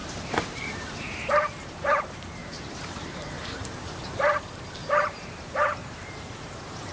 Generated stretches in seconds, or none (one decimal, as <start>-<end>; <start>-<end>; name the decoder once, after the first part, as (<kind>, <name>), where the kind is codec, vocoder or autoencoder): 0.0-2.0 (vocoder, BigVGAN v2); 2.4-4.0; 4.8-6.9